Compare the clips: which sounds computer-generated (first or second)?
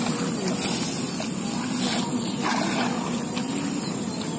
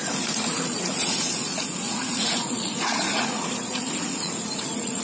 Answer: second